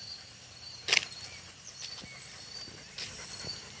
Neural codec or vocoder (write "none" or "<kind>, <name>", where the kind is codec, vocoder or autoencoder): none